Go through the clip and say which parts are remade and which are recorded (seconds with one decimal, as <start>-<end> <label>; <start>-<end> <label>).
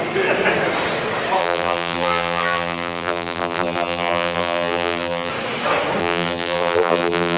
0.0-1.4 recorded; 1.4-5.3 remade; 5.3-6.0 recorded; 6.0-7.4 remade